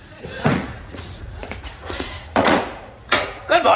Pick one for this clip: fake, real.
fake